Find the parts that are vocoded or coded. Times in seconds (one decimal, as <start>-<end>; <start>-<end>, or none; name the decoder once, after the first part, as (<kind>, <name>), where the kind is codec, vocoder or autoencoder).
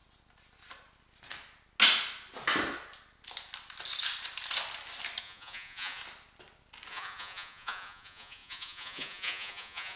5.2-6.0 (vocoder, Vocos); 6.9-10.0